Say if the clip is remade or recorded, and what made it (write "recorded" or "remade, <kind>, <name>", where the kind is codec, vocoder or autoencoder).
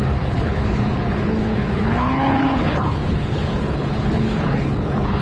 remade, codec, HILCodec